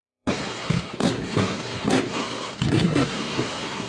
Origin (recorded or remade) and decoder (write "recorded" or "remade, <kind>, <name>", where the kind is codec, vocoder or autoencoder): remade, codec, SNAC